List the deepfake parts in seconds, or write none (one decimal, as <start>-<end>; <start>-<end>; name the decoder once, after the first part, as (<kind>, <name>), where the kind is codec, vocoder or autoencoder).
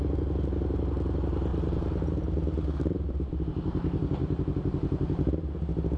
none